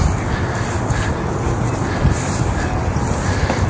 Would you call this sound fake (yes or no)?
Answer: no